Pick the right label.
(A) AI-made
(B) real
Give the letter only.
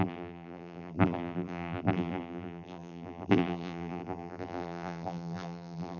A